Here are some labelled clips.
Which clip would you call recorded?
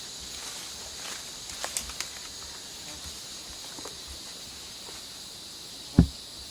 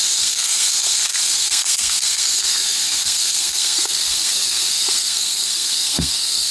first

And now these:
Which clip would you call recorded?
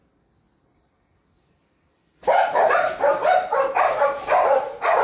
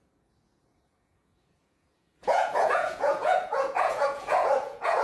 first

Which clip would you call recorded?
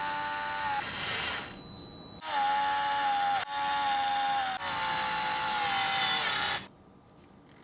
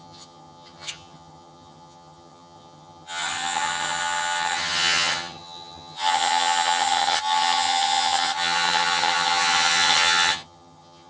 first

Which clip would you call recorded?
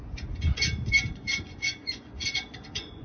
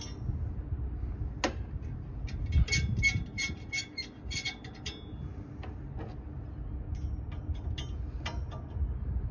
second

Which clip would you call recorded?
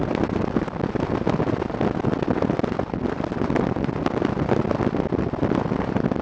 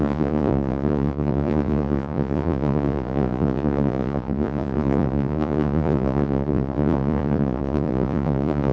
first